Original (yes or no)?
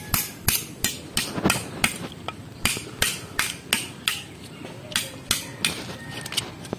yes